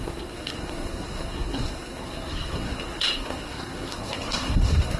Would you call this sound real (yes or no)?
no